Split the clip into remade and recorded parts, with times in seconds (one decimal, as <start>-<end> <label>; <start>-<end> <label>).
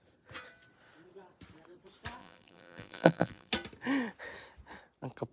0.0-2.2 recorded; 2.2-3.5 remade; 3.5-5.3 recorded